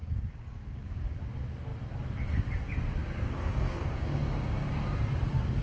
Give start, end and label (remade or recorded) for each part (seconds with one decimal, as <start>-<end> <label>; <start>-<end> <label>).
0.0-1.2 remade; 1.2-3.0 recorded; 3.0-4.7 remade; 4.7-5.6 recorded